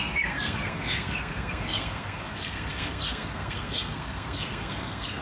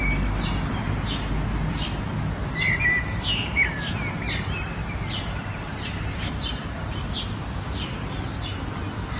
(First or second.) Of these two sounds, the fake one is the first